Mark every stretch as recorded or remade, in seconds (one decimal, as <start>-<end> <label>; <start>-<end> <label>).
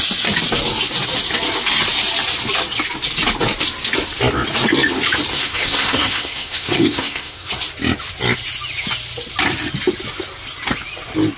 0.0-5.3 recorded; 5.3-7.5 remade; 7.5-11.4 recorded